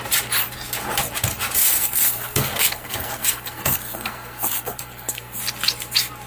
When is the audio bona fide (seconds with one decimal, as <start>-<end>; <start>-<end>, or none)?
0.0-1.6; 5.4-6.3